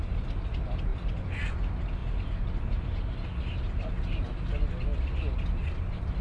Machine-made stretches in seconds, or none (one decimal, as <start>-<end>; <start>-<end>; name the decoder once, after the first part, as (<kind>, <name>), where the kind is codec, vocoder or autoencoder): none